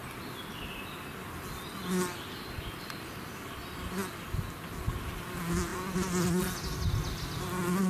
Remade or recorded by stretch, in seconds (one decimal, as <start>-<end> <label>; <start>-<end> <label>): 0.0-7.9 recorded